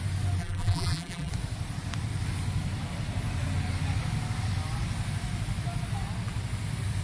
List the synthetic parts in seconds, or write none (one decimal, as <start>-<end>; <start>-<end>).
0.4-1.3